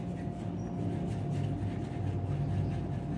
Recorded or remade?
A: recorded